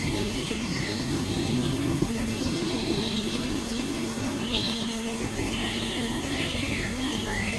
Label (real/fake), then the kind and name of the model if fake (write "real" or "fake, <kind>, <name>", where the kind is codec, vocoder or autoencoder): fake, codec, SNAC